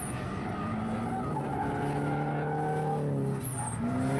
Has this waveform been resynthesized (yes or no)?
no